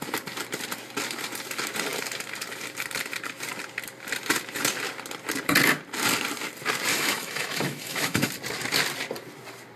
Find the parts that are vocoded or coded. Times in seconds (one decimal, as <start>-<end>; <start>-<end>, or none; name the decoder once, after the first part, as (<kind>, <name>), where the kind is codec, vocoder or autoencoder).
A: 6.9-8.3 (autoencoder, DAC-VAE)